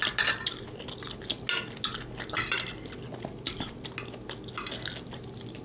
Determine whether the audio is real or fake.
real